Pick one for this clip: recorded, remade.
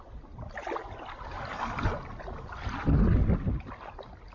recorded